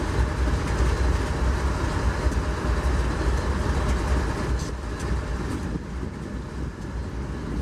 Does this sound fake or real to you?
real